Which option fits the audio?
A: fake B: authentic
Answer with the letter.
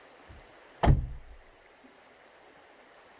B